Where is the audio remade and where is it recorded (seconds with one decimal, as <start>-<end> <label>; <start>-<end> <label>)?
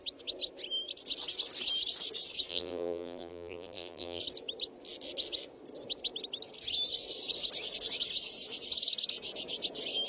0.0-2.5 recorded; 2.5-4.2 remade; 4.2-10.1 recorded